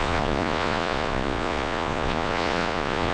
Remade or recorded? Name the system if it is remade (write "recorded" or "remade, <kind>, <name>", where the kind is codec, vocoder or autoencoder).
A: remade, vocoder, Vocos